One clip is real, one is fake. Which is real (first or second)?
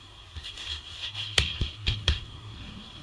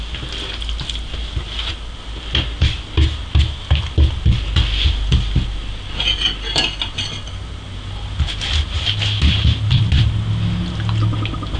second